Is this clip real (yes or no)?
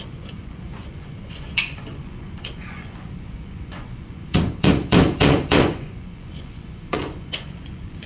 no